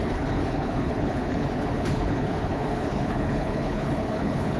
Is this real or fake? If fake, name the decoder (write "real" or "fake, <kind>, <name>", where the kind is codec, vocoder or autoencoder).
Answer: fake, codec, HILCodec